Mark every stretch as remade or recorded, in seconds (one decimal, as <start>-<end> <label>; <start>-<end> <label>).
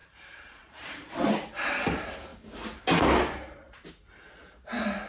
0.0-1.3 remade; 1.3-5.1 recorded